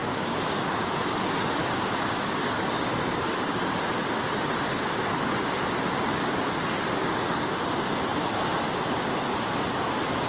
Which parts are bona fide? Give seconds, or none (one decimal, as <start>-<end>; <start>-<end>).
1.0-1.6; 3.6-7.0; 7.6-10.3